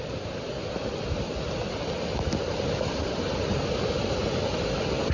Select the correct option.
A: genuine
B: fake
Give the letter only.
A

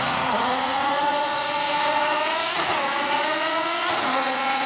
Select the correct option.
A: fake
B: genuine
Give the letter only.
A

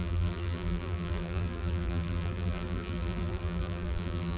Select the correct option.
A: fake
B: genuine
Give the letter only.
A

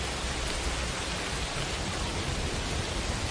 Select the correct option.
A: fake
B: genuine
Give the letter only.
B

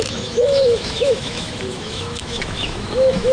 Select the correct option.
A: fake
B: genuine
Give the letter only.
A